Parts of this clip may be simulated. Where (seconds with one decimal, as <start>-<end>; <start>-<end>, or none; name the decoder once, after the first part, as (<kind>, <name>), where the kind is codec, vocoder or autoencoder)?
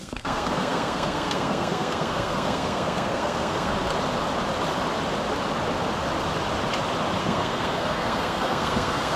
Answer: 0.0-3.7 (codec, SNAC); 7.2-9.2